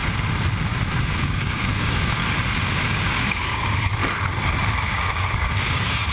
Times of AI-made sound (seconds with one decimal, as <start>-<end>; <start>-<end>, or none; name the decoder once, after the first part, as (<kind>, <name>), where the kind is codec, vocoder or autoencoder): 1.2-2.2 (codec, DAC); 2.8-4.0; 4.7-6.1